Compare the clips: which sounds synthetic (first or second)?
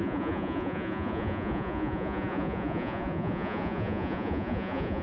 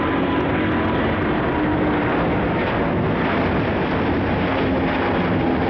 first